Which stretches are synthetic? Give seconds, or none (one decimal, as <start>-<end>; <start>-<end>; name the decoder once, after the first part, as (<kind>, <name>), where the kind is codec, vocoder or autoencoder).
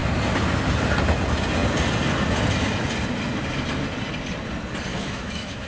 4.9-5.7 (autoencoder, DAC-VAE)